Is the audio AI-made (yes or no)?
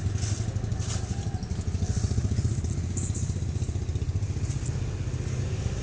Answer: no